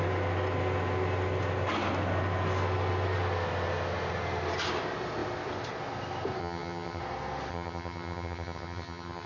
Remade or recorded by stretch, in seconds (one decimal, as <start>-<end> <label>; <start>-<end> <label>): 0.0-6.4 recorded; 6.4-7.0 remade; 7.0-7.5 recorded; 7.5-9.3 remade